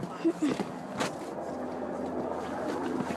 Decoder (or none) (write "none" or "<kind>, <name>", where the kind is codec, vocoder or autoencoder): none